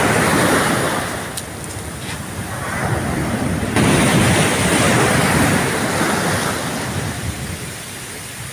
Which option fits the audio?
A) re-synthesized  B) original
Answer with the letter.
B